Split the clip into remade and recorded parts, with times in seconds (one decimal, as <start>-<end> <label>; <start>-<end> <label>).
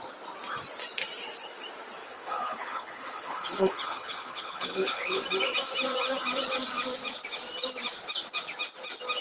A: 0.0-2.0 recorded; 2.0-5.2 remade; 5.2-9.2 recorded